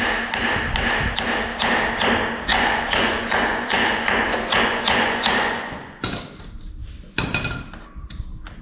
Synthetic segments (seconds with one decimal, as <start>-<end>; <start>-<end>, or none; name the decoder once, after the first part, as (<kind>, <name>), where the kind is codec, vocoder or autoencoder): 2.5-6.1 (vocoder, Vocos)